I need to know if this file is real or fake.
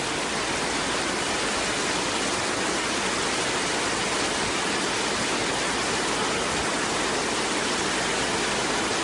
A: real